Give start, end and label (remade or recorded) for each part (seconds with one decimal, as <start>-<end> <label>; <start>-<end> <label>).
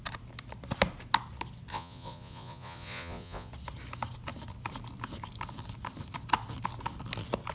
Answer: 0.0-1.7 recorded; 1.7-3.5 remade; 3.5-7.5 recorded